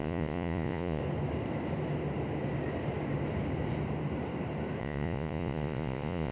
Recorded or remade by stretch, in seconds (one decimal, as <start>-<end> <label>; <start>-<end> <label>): 0.0-1.0 remade; 1.0-4.8 recorded; 4.8-6.3 remade